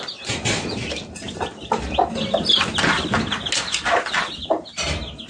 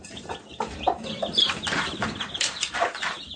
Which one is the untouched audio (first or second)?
first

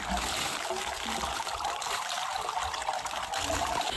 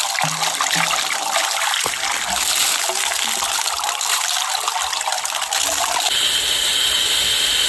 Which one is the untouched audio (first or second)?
second